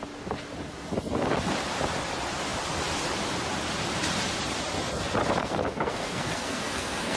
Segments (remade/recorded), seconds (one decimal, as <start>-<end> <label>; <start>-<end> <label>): 0.0-5.4 recorded; 5.4-7.2 remade

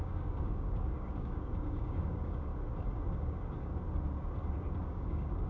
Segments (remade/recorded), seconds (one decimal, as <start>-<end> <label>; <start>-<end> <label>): 0.0-2.5 remade; 2.5-3.1 recorded; 3.1-3.7 remade; 3.7-4.8 recorded; 4.8-5.5 remade

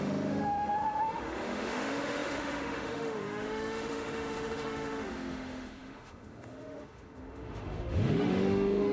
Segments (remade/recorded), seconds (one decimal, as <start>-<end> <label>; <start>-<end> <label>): 0.0-8.9 remade

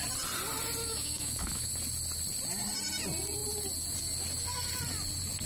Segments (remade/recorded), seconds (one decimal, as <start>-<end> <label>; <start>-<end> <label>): 0.0-0.8 recorded; 0.8-1.7 remade; 1.7-5.5 recorded

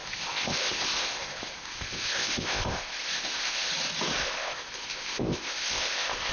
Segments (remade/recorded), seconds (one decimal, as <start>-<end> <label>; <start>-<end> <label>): 0.0-3.7 remade; 3.7-4.2 recorded; 4.2-6.3 remade

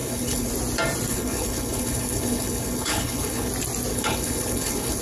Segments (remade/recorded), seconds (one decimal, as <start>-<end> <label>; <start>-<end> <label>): 0.0-0.5 remade; 0.5-1.1 recorded; 1.1-3.5 remade; 3.5-3.9 recorded; 3.9-5.0 remade

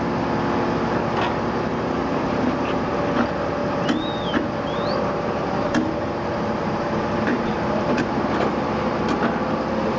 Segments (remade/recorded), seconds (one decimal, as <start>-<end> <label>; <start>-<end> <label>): 0.0-2.0 recorded; 2.0-2.9 remade; 2.9-3.6 recorded; 3.6-8.3 remade; 8.3-10.0 recorded